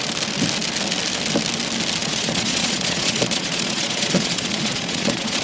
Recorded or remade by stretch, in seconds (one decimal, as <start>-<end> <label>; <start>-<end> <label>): 0.0-2.0 recorded; 2.0-5.4 remade